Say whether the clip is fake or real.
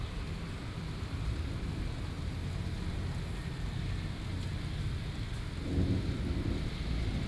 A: real